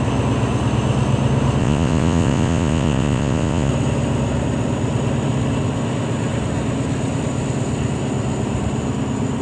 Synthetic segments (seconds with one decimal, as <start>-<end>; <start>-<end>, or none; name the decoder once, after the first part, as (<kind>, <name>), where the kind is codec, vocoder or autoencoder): 1.6-3.7 (vocoder, Vocos)

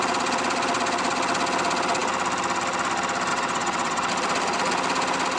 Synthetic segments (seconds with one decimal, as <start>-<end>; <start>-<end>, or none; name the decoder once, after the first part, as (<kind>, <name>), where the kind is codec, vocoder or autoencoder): 3.3-4.1 (vocoder, WaveNeXt)

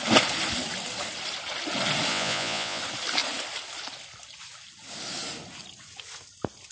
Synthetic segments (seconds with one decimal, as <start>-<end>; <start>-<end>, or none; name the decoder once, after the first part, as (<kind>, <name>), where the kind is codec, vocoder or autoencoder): 2.1-2.8 (vocoder, Vocos)

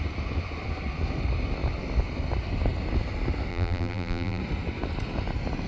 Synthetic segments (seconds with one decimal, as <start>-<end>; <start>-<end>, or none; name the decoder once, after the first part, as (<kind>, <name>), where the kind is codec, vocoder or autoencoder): 3.5-4.4 (vocoder, BigVGAN v2)